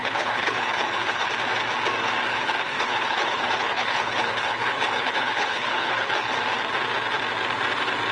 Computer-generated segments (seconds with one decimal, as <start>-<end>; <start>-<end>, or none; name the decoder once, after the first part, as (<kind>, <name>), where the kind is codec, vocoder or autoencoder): 0.0-1.3 (codec, HILCodec); 2.3-6.3